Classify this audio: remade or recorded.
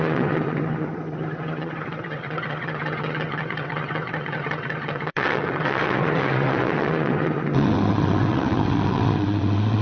remade